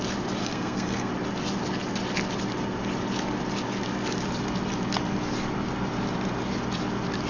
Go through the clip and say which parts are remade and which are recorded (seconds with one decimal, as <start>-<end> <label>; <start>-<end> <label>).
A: 0.0-0.4 recorded; 0.4-1.1 remade; 1.1-7.3 recorded